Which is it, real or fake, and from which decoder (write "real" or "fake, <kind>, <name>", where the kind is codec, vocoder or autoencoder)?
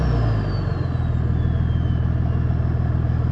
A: real